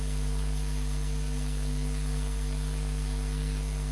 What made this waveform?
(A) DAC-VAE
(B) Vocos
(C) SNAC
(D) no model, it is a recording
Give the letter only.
C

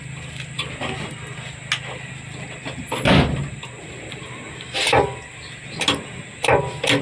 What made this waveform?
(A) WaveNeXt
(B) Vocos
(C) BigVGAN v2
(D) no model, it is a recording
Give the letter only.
D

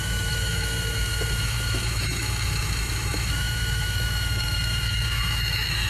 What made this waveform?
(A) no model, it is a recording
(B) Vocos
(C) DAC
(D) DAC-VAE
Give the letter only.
D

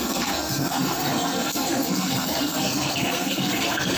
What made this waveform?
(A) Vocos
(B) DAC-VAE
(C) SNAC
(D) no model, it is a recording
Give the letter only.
C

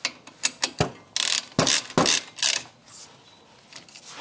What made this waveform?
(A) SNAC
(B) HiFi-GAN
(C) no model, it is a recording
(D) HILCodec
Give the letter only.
C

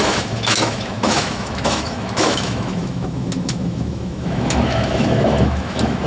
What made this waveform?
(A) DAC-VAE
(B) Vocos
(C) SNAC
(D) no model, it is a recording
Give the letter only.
A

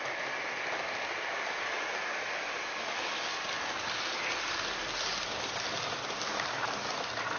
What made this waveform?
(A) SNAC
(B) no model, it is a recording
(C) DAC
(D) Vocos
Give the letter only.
B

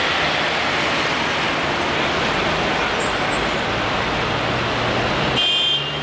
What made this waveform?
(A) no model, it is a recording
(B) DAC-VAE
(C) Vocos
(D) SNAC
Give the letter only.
A